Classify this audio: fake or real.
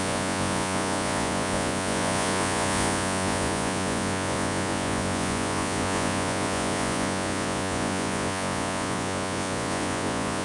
fake